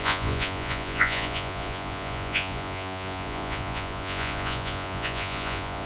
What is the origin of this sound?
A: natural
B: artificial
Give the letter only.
B